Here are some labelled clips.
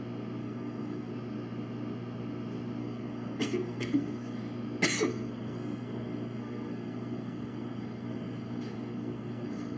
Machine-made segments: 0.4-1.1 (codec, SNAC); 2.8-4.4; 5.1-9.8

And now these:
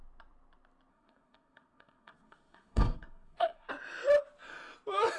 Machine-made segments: 0.9-3.7 (codec, SNAC)

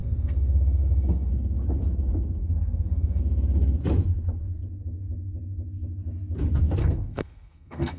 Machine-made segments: 0.0-1.3 (codec, SNAC); 2.4-3.2; 6.8-8.0

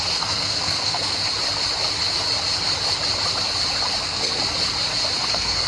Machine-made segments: 0.0-1.2 (codec, SNAC); 4.0-4.4; 5.3-5.7

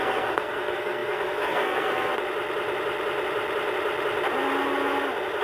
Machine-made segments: 0.0-2.1 (codec, SNAC)

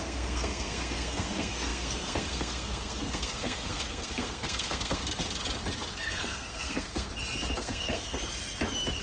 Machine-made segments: 0.0-5.0 (codec, SNAC); 6.0-7.1; 7.6-8.2